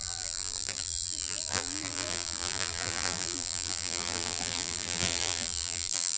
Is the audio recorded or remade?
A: remade